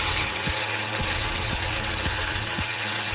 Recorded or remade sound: remade